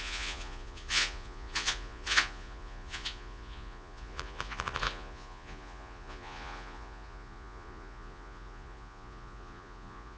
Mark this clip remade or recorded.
remade